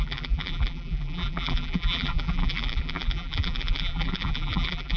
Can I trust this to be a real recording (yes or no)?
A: no